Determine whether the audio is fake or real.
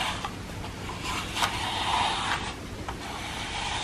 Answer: real